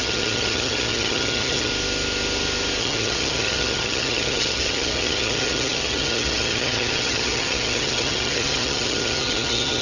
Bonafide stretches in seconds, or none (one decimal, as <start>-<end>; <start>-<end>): 1.7-2.8